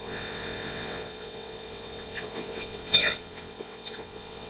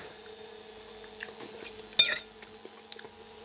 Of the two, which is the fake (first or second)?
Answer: first